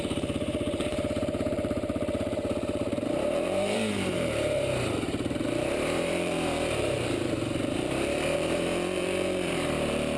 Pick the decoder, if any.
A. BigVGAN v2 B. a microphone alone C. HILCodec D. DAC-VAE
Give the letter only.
A